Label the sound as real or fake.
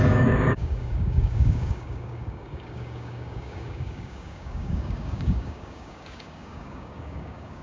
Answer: fake